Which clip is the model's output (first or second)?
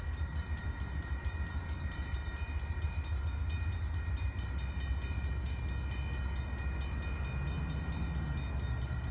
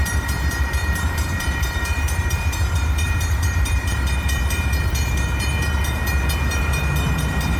second